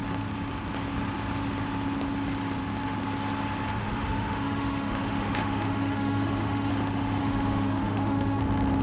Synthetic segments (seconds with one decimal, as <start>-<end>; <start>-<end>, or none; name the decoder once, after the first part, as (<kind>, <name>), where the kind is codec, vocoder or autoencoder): 3.8-6.7 (autoencoder, DAC-VAE); 7.2-8.4